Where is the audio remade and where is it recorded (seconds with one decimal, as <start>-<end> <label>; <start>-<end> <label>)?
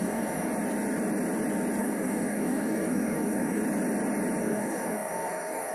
0.0-0.5 remade; 0.5-1.8 recorded; 1.8-3.6 remade; 3.6-4.4 recorded; 4.4-5.7 remade